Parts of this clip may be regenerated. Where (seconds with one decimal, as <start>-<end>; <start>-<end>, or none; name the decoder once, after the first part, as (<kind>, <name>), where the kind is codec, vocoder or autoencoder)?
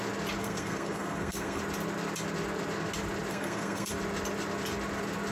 0.4-1.6 (codec, SNAC); 3.3-3.9